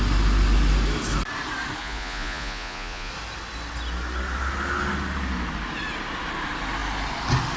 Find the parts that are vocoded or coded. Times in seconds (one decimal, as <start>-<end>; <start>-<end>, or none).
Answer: 1.8-3.1